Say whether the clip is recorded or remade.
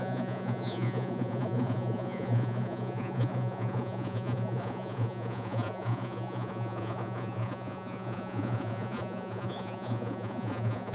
remade